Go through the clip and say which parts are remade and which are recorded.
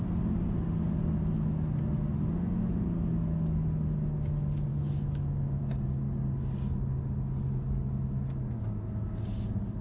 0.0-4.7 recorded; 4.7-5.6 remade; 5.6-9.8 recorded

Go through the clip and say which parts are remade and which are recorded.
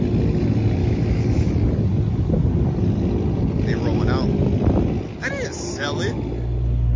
0.0-0.8 recorded; 0.8-1.5 remade; 1.5-7.0 recorded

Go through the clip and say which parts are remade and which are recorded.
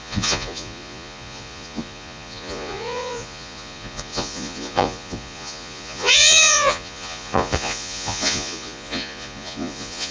0.0-10.1 remade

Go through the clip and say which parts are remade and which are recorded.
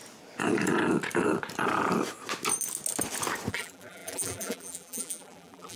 0.0-3.5 recorded; 3.5-5.8 remade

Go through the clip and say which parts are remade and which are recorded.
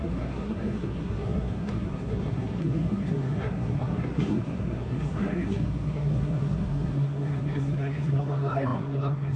0.0-9.4 remade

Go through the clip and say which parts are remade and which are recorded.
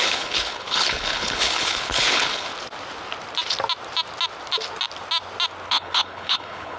0.0-2.5 remade; 2.5-5.7 recorded; 5.7-6.8 remade